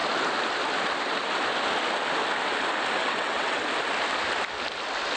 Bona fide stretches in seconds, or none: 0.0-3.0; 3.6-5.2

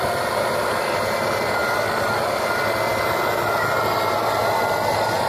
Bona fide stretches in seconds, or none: 0.0-5.3